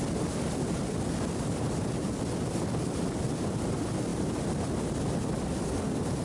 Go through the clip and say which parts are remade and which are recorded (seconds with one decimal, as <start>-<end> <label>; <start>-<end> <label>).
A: 0.0-4.1 recorded; 4.1-5.0 remade; 5.0-6.2 recorded